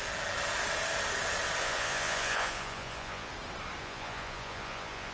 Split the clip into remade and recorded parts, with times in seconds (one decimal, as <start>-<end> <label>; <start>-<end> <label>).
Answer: 0.0-1.6 recorded; 1.6-3.3 remade; 3.3-3.8 recorded; 3.8-5.1 remade